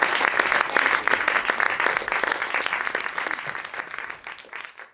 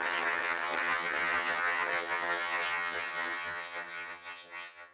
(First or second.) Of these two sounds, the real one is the first